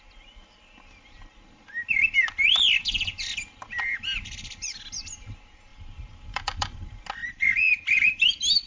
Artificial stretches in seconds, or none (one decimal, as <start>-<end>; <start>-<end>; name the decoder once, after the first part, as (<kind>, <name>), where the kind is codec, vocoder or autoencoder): 5.7-6.8 (vocoder, BigVGAN v2)